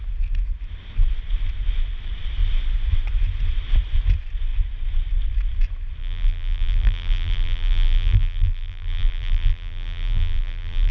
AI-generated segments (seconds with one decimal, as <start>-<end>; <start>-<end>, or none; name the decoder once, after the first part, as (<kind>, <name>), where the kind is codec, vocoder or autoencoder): 6.0-10.9 (vocoder, BigVGAN v2)